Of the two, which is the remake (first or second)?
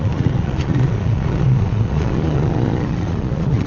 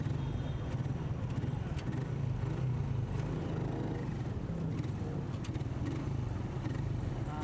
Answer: first